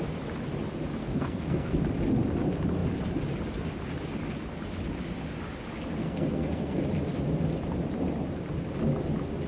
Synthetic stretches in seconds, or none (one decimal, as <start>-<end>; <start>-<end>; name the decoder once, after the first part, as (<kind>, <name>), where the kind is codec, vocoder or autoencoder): 1.0-1.8 (codec, SNAC); 6.0-6.8